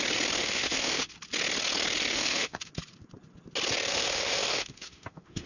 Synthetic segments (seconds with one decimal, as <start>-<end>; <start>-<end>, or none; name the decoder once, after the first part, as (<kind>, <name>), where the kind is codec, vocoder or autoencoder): 0.4-1.1 (autoencoder, DAC-VAE); 2.1-2.7; 3.9-5.5